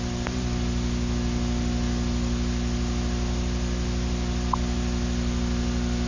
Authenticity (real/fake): real